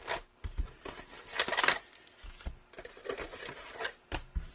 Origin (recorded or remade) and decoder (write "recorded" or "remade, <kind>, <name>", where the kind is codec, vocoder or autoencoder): recorded